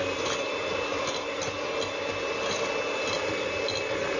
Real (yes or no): yes